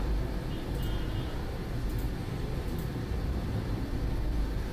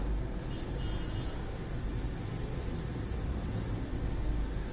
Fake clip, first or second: first